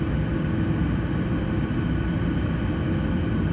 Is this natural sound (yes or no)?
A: yes